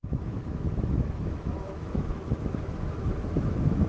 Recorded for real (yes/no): no